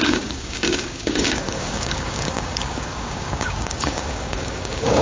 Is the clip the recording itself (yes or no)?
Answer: no